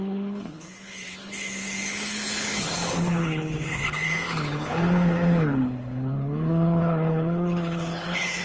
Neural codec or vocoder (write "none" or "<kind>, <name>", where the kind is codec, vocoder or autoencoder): codec, HILCodec